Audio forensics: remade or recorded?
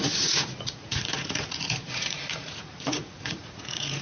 remade